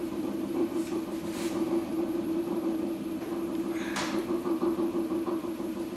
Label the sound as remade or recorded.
remade